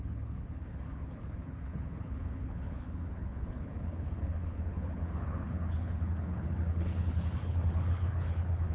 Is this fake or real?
fake